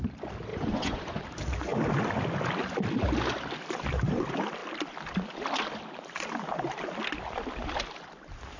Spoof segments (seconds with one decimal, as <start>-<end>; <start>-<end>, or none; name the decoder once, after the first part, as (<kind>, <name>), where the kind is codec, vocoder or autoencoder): 0.5-1.2 (vocoder, Vocos)